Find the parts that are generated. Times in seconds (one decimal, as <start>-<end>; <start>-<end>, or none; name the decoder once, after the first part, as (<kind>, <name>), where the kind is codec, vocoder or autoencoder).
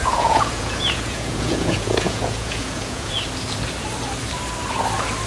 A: 0.0-3.2 (vocoder, Vocos)